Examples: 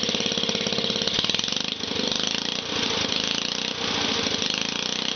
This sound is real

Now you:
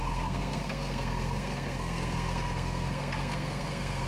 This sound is fake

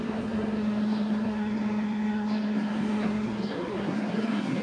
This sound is fake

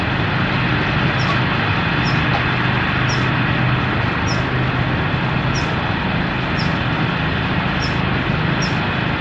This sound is real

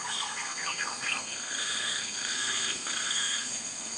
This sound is fake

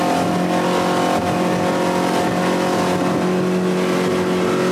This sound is real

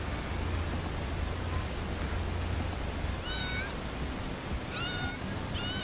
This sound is real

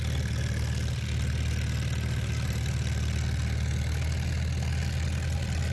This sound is real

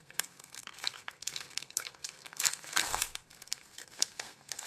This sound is fake